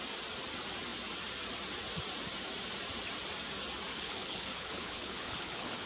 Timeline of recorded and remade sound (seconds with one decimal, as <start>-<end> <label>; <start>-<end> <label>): 0.0-3.9 recorded; 3.9-5.9 remade